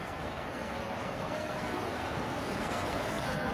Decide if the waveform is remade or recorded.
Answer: remade